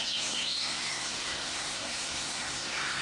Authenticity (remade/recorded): remade